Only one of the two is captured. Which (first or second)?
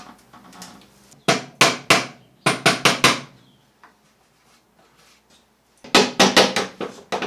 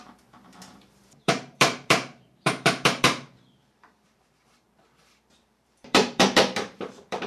first